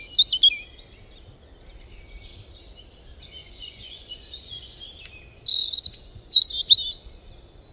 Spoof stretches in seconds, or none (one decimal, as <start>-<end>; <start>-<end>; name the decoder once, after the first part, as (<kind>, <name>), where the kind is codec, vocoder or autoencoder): 3.4-4.8 (vocoder, Vocos); 5.5-6.4